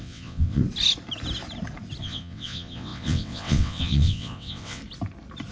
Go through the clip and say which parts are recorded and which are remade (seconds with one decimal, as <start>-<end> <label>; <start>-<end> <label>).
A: 0.0-0.6 remade; 0.6-2.0 recorded; 2.0-4.8 remade; 4.8-5.5 recorded